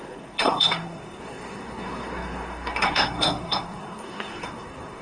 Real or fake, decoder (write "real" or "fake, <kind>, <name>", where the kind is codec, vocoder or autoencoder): fake, codec, SNAC